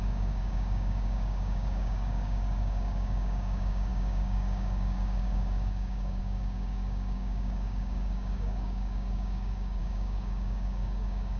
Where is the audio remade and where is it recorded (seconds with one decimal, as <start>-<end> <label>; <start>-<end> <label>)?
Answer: 0.0-11.4 remade